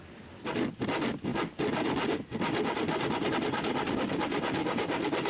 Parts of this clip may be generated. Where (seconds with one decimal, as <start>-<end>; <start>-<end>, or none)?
none